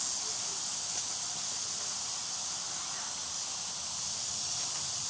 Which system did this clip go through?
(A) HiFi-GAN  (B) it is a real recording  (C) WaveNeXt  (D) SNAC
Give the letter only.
B